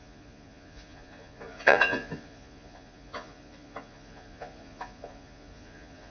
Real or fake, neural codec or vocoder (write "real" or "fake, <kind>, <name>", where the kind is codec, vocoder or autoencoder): fake, vocoder, Vocos